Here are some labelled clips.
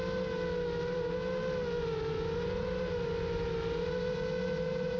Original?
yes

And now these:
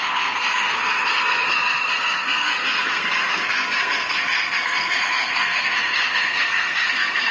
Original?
no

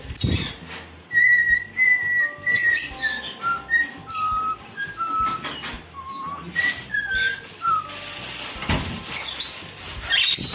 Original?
no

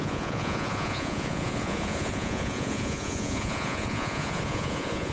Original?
no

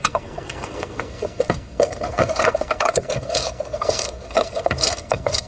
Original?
no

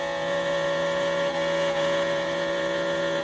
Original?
no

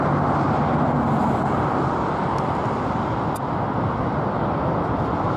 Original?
yes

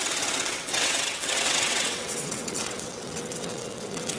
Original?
no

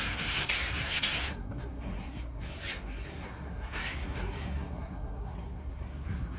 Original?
no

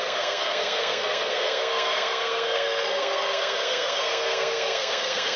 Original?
no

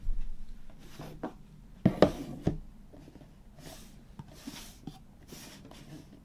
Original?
yes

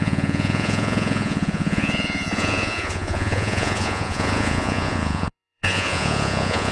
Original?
no